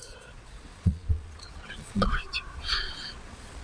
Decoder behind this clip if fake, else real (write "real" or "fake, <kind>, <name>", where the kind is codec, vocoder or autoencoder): fake, vocoder, Vocos